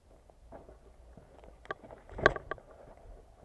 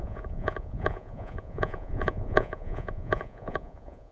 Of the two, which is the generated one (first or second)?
second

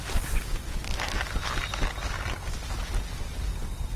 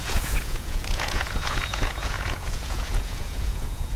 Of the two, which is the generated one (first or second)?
second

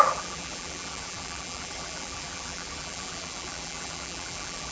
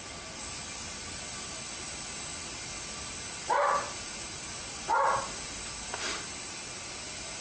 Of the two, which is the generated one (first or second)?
first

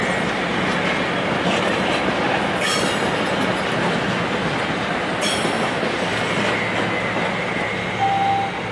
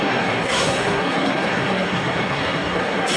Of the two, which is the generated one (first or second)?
second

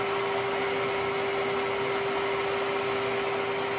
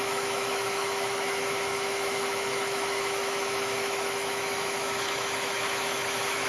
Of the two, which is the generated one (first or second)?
second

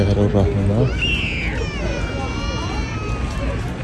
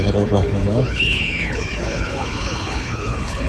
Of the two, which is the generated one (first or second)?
second